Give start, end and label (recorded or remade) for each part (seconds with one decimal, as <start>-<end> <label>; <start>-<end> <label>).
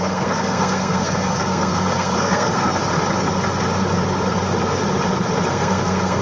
0.0-2.8 remade; 2.8-5.5 recorded; 5.5-6.2 remade